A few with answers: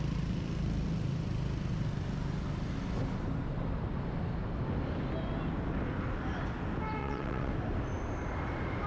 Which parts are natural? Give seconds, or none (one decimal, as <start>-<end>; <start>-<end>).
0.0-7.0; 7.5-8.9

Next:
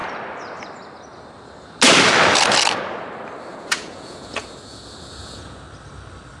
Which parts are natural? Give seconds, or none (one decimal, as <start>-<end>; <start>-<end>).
0.0-3.5; 5.6-6.4

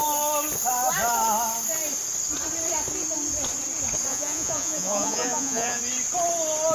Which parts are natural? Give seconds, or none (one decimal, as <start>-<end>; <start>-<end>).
0.0-4.1; 5.8-6.7

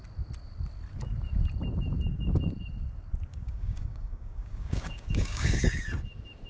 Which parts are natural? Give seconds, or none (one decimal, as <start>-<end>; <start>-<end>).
0.0-3.3; 5.9-6.5